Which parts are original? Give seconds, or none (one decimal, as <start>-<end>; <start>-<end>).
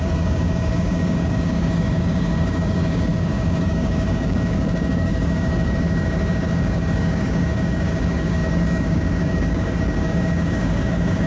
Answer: none